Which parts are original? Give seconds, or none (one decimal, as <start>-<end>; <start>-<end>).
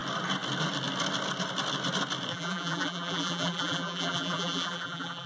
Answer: 0.0-2.3